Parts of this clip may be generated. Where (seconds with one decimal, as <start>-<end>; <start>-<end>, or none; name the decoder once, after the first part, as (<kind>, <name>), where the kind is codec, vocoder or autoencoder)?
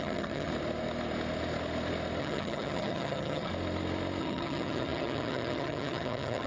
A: 0.0-0.5 (vocoder, HiFi-GAN); 2.2-3.5; 4.2-6.5